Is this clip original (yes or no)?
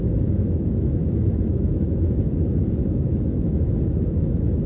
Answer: no